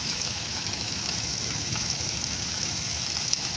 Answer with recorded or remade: remade